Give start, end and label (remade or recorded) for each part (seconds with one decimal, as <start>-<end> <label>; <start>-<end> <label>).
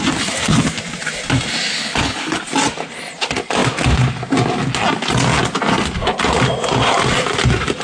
0.0-1.7 recorded; 1.7-2.4 remade; 2.4-7.8 recorded